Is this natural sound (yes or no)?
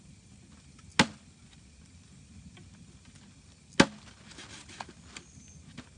yes